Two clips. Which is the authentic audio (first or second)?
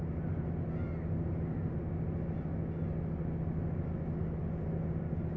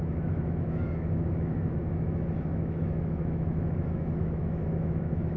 first